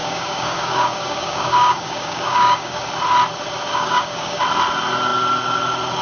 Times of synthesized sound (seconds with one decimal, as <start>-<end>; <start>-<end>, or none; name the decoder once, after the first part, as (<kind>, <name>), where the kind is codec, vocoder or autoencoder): 0.0-2.8 (codec, DAC); 3.7-4.4